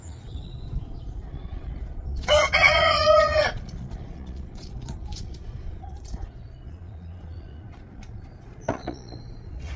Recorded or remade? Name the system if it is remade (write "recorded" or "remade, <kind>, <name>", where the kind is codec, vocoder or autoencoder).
remade, vocoder, Vocos